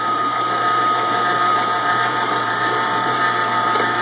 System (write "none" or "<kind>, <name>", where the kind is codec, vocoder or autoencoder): vocoder, BigVGAN v2